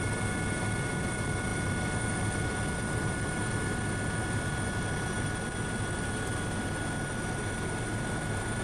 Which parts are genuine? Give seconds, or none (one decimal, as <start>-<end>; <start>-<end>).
0.0-8.6